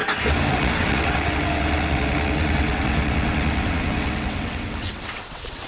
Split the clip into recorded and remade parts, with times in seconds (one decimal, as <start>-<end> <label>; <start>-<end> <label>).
0.0-0.5 recorded; 0.5-5.7 remade